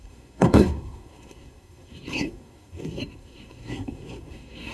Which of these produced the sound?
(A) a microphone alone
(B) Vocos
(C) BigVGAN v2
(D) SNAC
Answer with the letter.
D